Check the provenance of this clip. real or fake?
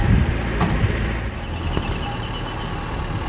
real